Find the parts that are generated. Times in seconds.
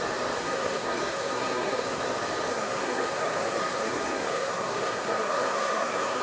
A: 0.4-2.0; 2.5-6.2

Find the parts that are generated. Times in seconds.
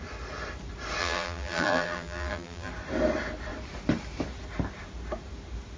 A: 1.0-2.7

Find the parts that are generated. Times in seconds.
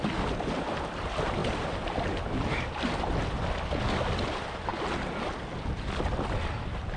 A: 1.4-2.9